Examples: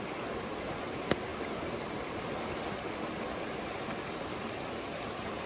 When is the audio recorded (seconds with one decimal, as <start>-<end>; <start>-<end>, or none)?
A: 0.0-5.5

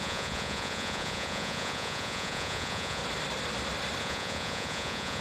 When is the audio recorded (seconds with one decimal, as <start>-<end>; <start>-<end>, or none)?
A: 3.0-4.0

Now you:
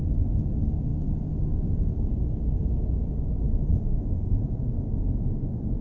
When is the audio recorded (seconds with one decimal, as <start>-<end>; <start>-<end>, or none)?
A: 0.0-3.7; 4.3-5.8

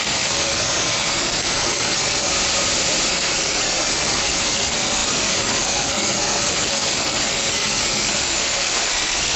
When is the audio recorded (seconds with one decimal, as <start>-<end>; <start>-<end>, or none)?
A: 2.3-3.1

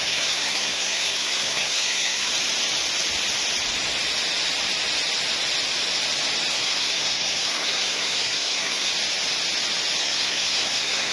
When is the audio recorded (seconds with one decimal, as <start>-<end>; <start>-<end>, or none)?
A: 2.3-6.5; 8.9-10.0

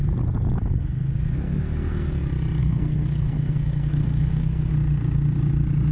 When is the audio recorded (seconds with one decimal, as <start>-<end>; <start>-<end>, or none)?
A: 0.0-0.8; 2.1-2.6; 4.7-5.9

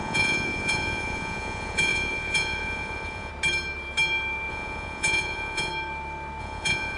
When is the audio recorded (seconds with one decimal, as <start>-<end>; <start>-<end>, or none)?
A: 3.3-4.5; 5.7-6.4